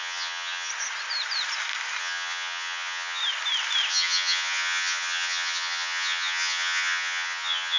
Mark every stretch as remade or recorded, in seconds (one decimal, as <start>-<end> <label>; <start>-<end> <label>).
0.0-0.7 remade; 0.7-2.0 recorded; 2.0-3.2 remade; 3.2-3.9 recorded; 3.9-7.8 remade